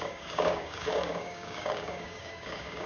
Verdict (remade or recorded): remade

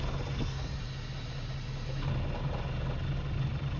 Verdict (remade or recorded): recorded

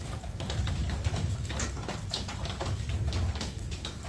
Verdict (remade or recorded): remade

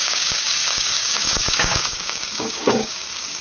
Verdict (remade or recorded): remade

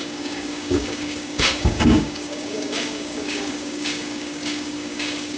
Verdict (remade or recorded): remade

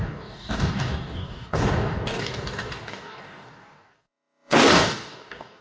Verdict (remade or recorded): remade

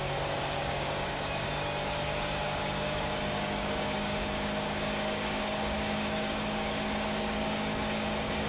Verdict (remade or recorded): remade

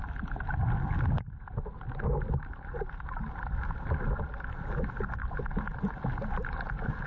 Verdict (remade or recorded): recorded